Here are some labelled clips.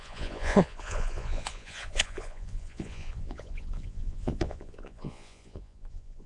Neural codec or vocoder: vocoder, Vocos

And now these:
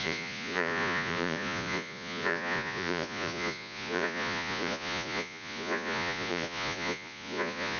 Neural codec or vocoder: vocoder, Vocos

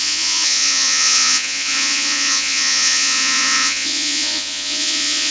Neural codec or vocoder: vocoder, Vocos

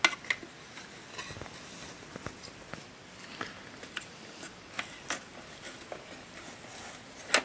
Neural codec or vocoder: none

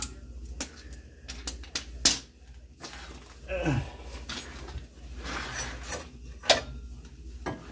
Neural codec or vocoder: none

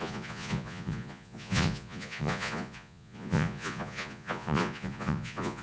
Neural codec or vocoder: vocoder, Vocos